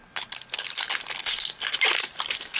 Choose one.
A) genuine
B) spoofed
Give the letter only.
A